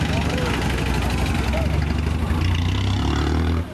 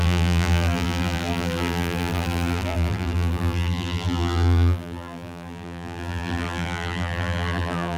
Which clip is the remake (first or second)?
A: second